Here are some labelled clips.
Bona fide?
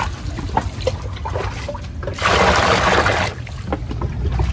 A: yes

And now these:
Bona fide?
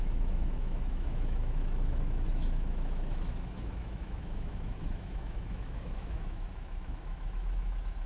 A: no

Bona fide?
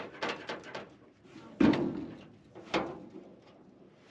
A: yes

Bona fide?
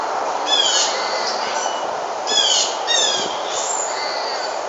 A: yes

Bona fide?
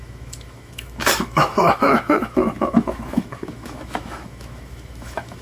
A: no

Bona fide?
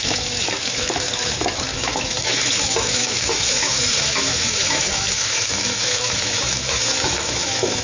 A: no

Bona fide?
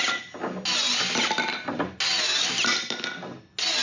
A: yes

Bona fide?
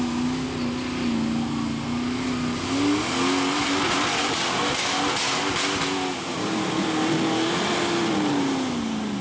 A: yes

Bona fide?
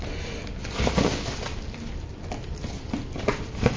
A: yes